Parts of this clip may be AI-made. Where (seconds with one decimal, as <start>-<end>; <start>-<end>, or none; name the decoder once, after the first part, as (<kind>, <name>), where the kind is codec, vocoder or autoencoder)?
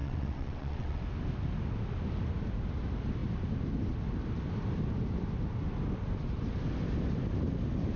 0.0-1.0 (vocoder, WaveNeXt)